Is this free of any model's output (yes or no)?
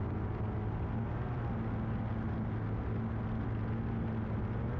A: yes